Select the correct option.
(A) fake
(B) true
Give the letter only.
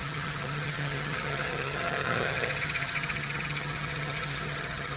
A